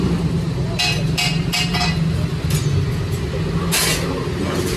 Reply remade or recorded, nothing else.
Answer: recorded